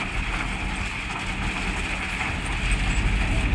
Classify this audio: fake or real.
real